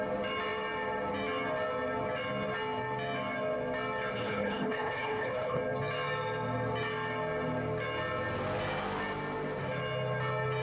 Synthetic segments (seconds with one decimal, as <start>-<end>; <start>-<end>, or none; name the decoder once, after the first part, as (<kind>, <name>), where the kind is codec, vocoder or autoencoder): 4.1-5.6 (codec, HILCodec)